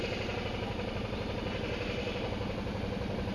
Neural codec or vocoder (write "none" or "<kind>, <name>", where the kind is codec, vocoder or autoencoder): none